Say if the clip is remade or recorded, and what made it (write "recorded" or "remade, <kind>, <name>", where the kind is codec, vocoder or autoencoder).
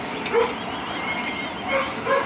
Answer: recorded